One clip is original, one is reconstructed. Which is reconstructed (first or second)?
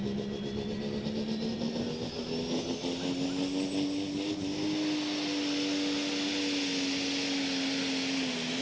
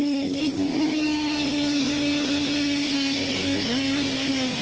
second